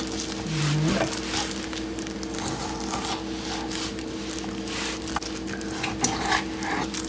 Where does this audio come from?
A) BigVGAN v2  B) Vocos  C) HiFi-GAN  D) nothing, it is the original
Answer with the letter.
D